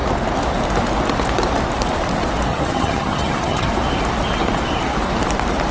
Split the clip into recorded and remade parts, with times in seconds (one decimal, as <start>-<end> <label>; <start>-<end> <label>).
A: 0.0-2.5 recorded; 2.5-3.7 remade; 3.7-5.7 recorded